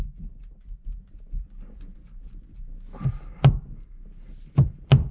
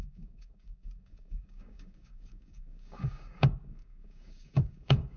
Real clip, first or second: first